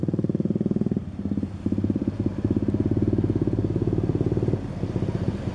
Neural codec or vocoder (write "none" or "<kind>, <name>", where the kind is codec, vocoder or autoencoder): none